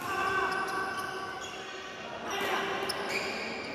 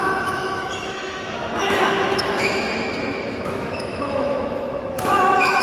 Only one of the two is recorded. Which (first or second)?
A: first